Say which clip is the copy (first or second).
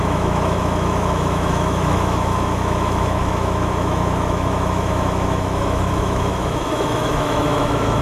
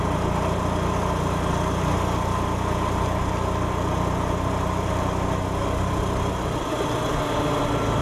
first